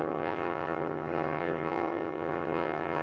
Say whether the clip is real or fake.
fake